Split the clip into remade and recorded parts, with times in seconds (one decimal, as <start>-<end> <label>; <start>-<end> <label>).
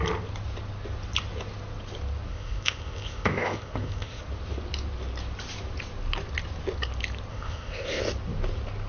0.0-2.3 recorded; 2.3-4.2 remade; 4.2-7.3 recorded; 7.3-8.0 remade; 8.0-8.9 recorded